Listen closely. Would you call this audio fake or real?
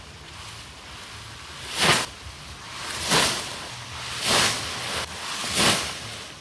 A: real